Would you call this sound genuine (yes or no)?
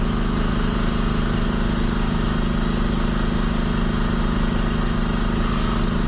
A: yes